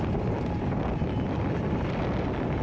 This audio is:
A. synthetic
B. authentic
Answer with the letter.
B